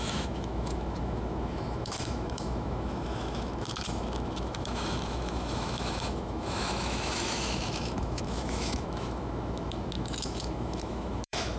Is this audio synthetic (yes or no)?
yes